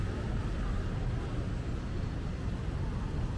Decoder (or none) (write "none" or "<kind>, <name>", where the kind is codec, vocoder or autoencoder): none